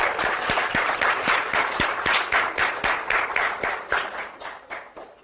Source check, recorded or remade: remade